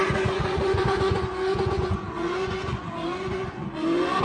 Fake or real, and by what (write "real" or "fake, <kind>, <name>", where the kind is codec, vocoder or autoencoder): fake, vocoder, Vocos